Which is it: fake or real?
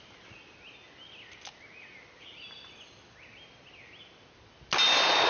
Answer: real